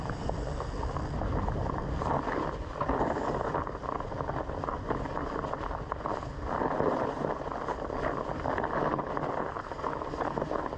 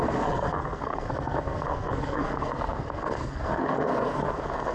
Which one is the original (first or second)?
first